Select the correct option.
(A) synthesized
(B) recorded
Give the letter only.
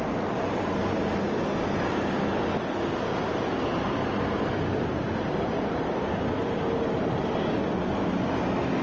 B